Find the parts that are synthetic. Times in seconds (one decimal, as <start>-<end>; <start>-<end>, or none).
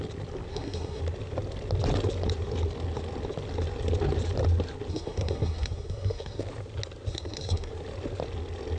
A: 0.5-1.0; 4.9-6.4; 7.1-7.7